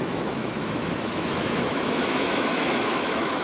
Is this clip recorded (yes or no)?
no